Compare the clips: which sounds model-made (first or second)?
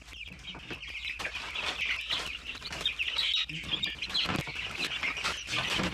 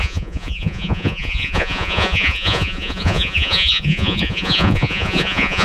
second